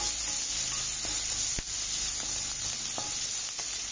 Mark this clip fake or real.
real